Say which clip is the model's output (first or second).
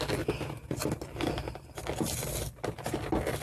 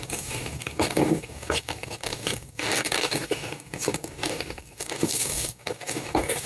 second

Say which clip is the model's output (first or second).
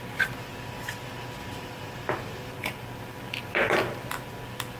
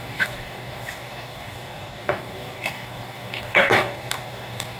second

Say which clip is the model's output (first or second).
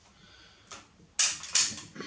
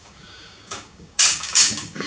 second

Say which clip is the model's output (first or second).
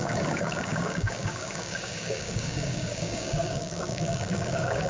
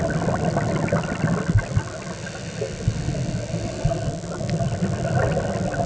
first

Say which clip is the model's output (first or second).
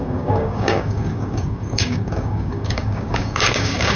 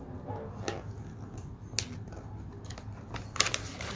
first